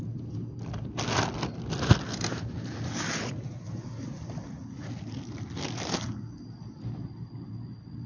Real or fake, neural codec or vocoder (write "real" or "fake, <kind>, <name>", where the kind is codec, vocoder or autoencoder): real